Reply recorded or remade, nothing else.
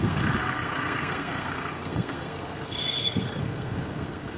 remade